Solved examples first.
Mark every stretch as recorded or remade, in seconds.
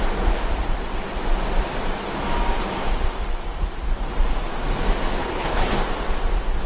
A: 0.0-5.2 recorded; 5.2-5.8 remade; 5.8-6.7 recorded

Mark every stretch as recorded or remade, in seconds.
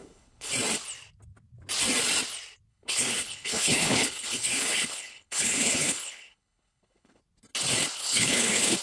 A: 0.0-0.5 remade; 0.5-2.7 recorded; 2.7-7.2 remade; 7.2-8.0 recorded; 8.0-8.8 remade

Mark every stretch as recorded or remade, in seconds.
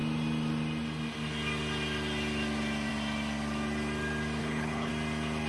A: 0.0-4.4 recorded; 4.4-4.9 remade; 4.9-5.5 recorded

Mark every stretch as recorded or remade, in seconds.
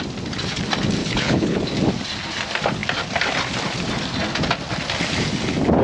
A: 0.0-1.0 recorded; 1.0-1.6 remade; 1.6-5.8 recorded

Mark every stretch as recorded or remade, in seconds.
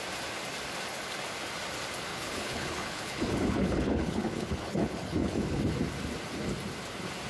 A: 0.0-2.1 recorded; 2.1-5.6 remade; 5.6-7.3 recorded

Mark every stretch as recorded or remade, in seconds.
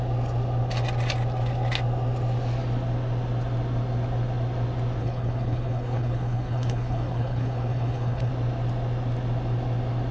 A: 0.0-5.0 recorded; 5.0-8.3 remade; 8.3-10.1 recorded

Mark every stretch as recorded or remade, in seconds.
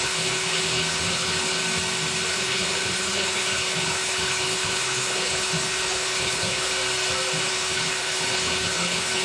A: 0.0-1.6 remade; 1.6-2.3 recorded; 2.3-6.7 remade; 6.7-7.4 recorded; 7.4-9.2 remade